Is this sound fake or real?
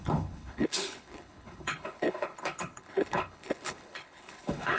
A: fake